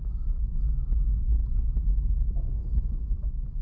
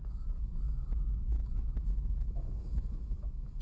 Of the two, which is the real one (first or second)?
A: first